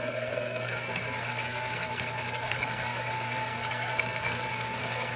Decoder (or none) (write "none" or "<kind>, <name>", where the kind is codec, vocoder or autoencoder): codec, SNAC